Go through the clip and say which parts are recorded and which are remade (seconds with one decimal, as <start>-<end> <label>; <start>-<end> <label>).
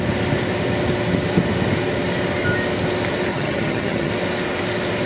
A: 0.0-3.3 recorded; 3.3-4.1 remade; 4.1-5.1 recorded